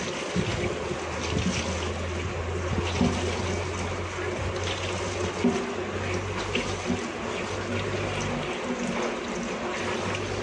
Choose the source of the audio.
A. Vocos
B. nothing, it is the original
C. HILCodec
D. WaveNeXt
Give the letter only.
B